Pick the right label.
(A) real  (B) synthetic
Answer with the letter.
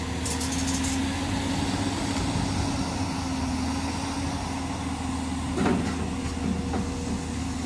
A